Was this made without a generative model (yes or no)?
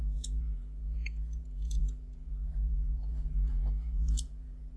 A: no